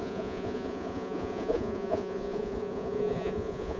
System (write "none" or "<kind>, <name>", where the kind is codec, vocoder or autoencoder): vocoder, Vocos